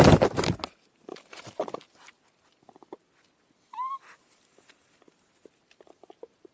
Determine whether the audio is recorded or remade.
recorded